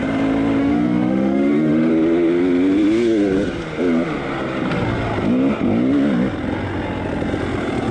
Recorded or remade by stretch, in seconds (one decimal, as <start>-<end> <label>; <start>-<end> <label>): 0.0-0.6 recorded; 0.6-1.9 remade; 1.9-7.9 recorded